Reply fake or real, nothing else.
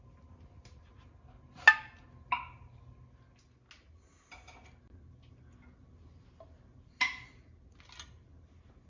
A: real